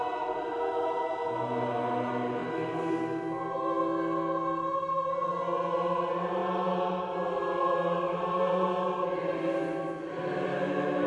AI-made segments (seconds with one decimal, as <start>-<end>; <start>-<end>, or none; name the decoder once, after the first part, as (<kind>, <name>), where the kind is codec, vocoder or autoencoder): 10.5-11.1 (autoencoder, DAC-VAE)